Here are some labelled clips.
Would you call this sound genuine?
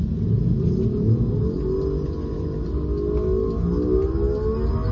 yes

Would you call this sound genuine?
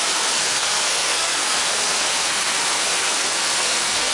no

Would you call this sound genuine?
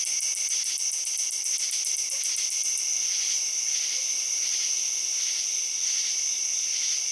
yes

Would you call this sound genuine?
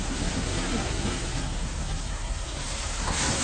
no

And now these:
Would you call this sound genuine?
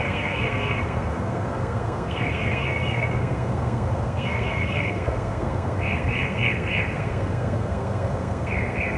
no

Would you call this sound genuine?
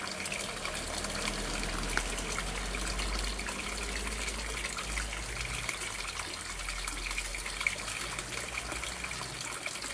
yes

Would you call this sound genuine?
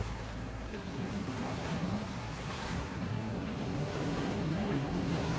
no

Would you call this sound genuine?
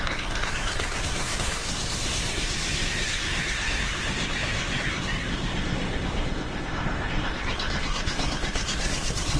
no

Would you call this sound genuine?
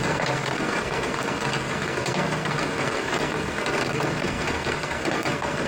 no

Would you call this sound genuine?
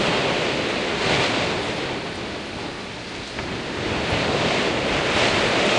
yes